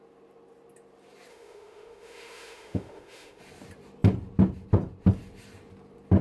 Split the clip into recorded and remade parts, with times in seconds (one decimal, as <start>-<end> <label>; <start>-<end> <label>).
0.0-1.3 recorded; 1.3-3.4 remade; 3.4-6.2 recorded